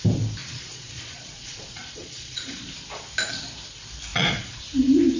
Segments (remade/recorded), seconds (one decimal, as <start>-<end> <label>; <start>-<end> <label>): 0.0-0.4 recorded; 0.4-2.7 remade; 2.7-4.1 recorded; 4.1-4.7 remade; 4.7-5.2 recorded